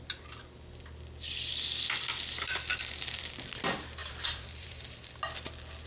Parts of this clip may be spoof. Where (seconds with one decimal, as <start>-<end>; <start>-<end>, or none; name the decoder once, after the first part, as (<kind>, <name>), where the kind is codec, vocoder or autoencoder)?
2.7-3.2 (vocoder, BigVGAN v2); 4.0-5.1